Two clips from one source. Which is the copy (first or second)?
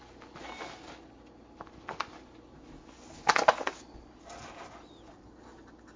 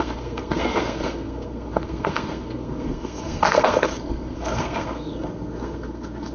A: second